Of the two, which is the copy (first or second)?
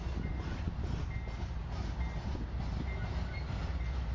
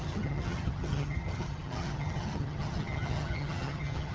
second